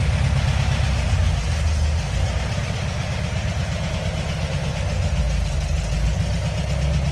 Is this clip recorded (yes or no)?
yes